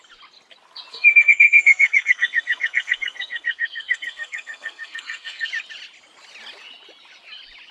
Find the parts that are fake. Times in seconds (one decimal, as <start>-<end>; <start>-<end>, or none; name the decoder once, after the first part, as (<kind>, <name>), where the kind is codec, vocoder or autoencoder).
0.9-5.5 (codec, SNAC)